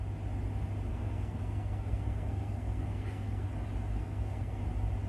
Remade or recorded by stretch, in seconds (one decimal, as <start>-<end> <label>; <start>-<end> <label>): 0.0-0.9 recorded; 0.9-3.5 remade; 3.5-3.9 recorded; 3.9-4.6 remade; 4.6-5.1 recorded